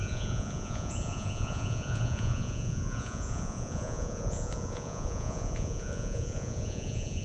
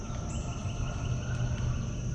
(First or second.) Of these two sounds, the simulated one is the first